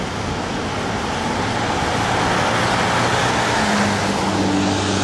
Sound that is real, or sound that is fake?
real